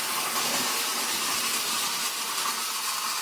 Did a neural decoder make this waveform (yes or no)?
no